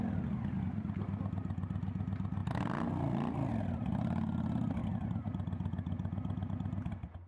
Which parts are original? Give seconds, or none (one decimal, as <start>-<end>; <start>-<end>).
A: 0.0-7.3